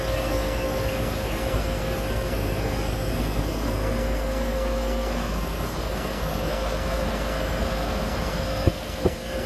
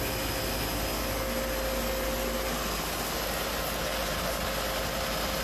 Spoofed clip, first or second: first